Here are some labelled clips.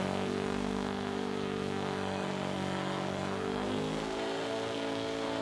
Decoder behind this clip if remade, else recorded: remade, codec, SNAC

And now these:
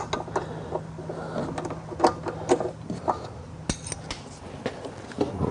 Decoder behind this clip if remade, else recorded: recorded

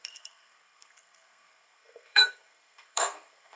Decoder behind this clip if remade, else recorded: remade, codec, SNAC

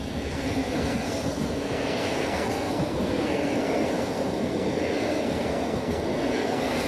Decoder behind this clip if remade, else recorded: remade, codec, SNAC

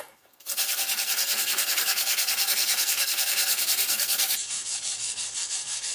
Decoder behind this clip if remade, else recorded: remade, codec, SNAC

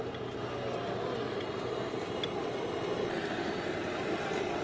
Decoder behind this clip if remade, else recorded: recorded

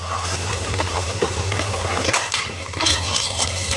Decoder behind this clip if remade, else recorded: remade, codec, SNAC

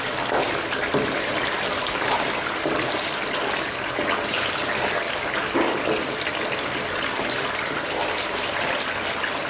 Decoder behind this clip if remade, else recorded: recorded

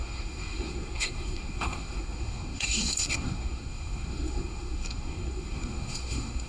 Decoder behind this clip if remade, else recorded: remade, codec, SNAC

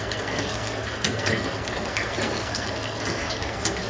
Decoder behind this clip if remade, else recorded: remade, codec, SNAC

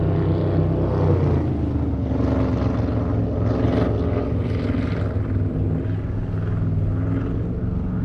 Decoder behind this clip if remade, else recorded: recorded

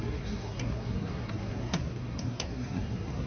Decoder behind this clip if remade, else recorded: remade, codec, SNAC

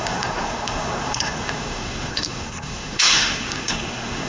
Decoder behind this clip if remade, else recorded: remade, codec, SNAC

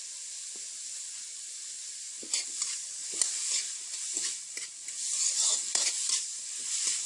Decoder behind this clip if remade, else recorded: recorded